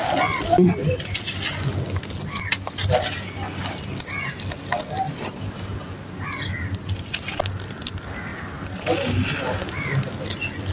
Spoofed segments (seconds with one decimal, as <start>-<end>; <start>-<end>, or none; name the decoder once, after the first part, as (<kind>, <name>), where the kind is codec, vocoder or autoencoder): none